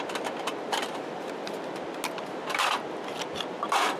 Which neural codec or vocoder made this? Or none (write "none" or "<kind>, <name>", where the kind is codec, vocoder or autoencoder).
none